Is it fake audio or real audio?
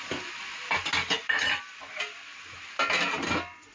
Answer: real